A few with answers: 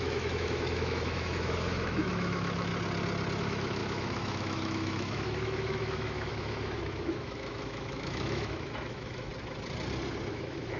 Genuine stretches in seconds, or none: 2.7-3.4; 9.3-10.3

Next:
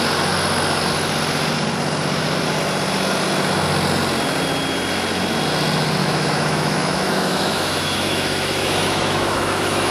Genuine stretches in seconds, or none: 0.0-6.0

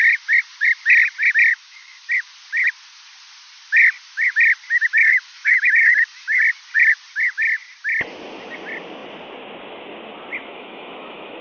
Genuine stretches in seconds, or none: 0.0-1.5; 2.1-4.9; 6.4-10.5

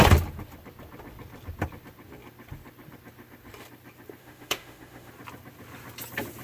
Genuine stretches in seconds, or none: 0.0-4.2; 5.1-6.4

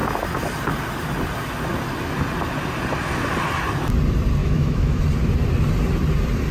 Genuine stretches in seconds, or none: 0.0-4.4; 5.0-6.5

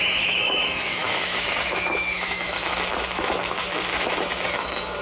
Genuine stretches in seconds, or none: none